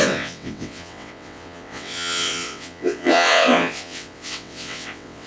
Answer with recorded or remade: remade